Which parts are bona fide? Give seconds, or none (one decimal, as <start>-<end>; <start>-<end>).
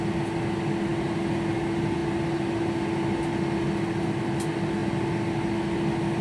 0.0-0.9; 1.5-2.0; 2.9-6.2